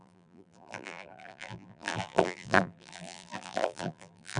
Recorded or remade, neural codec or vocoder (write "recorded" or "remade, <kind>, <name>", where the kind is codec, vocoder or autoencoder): remade, vocoder, BigVGAN v2